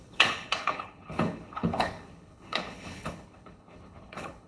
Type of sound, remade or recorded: remade